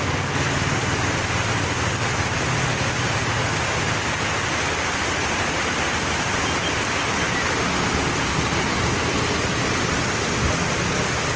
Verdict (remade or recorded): recorded